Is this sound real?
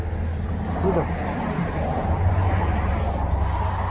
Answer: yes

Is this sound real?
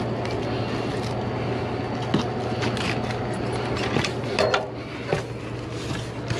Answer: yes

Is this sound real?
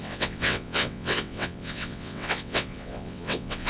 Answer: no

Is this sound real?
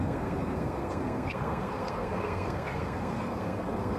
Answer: no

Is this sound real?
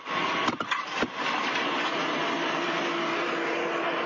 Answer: no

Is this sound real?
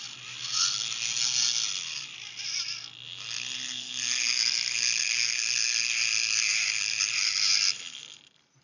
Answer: yes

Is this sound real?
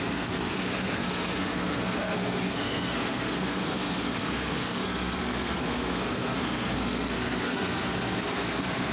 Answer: no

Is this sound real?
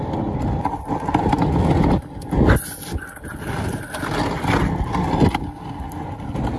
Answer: yes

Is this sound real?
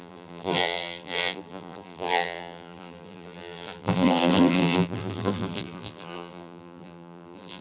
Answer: no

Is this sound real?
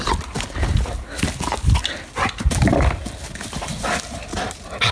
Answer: yes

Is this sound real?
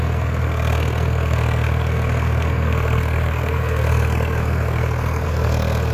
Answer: no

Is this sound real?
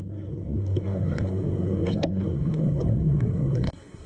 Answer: no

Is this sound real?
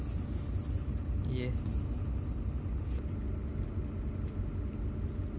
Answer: yes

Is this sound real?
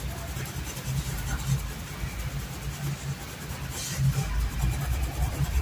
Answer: yes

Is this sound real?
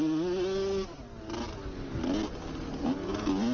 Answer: yes